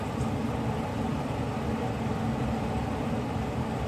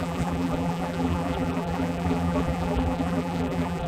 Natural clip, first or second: first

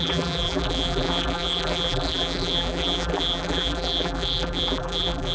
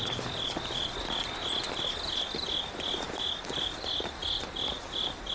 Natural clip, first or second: second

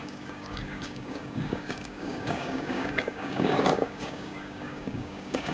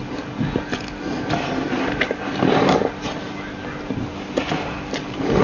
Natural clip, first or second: second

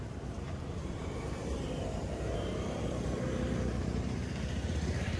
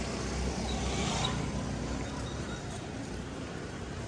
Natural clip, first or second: second